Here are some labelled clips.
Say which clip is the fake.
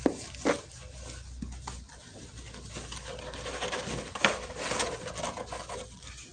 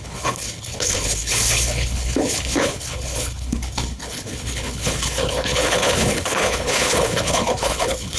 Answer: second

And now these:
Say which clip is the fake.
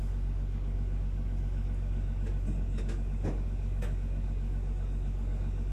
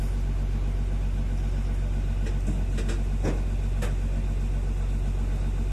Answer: first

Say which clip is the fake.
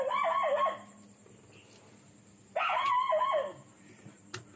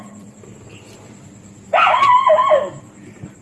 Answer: second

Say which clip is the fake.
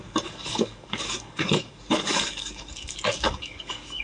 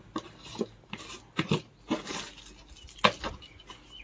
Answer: first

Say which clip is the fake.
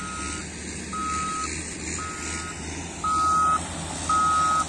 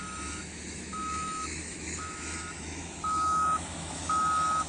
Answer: second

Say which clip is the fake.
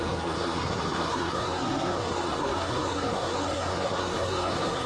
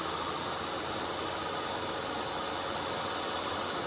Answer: first